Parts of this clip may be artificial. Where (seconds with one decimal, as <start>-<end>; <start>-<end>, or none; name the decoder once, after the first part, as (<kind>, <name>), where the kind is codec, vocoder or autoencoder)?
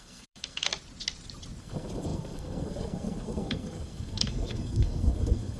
0.0-0.7 (codec, SNAC); 1.6-5.6